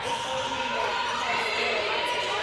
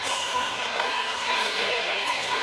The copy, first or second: second